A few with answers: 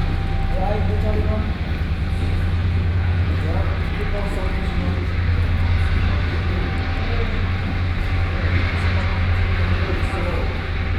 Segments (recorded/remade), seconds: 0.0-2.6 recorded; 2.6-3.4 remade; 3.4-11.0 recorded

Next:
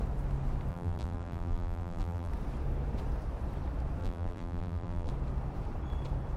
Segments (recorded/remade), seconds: 0.0-0.7 recorded; 0.7-2.3 remade; 2.3-4.0 recorded; 4.0-5.1 remade; 5.1-6.4 recorded

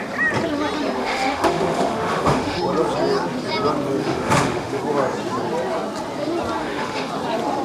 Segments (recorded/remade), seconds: 0.0-1.0 recorded; 1.0-2.6 remade; 2.6-4.0 recorded; 4.0-4.8 remade; 4.8-6.6 recorded; 6.6-7.1 remade; 7.1-7.6 recorded

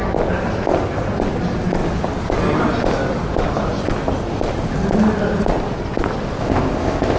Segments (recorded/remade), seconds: 0.0-6.4 recorded; 6.4-7.2 remade

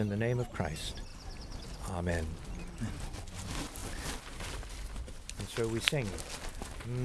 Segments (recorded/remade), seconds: 0.0-7.0 recorded

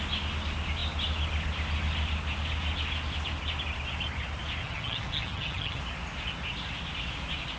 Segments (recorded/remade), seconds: 0.0-4.6 recorded; 4.6-5.8 remade; 5.8-7.6 recorded

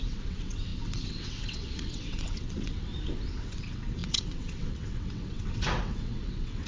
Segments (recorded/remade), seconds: 0.0-2.9 remade; 2.9-3.4 recorded; 3.4-6.7 remade

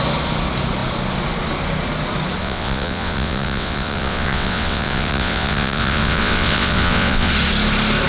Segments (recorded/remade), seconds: 0.0-2.4 recorded; 2.4-7.3 remade; 7.3-8.1 recorded